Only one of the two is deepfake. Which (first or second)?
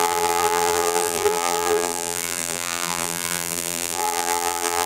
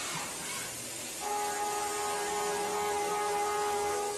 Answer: first